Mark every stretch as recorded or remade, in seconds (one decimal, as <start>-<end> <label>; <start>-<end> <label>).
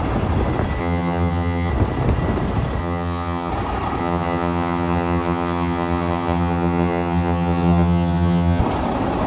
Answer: 0.0-0.8 recorded; 0.8-1.7 remade; 1.7-2.8 recorded; 2.8-3.5 remade; 3.5-4.0 recorded; 4.0-8.6 remade; 8.6-9.3 recorded